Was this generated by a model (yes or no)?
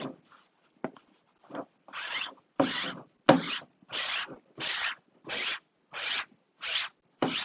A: no